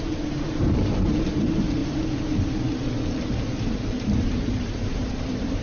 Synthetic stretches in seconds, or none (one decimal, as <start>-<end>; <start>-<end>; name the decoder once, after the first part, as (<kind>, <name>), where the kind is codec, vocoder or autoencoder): 0.0-1.8 (vocoder, BigVGAN v2); 3.7-5.6